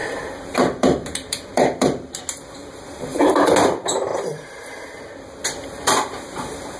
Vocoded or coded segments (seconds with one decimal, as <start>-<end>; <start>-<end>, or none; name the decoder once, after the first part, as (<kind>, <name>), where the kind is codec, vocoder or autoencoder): 0.0-2.2 (vocoder, BigVGAN v2); 2.6-3.5; 4.1-5.0